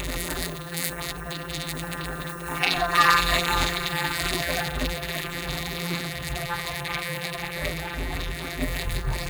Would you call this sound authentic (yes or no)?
no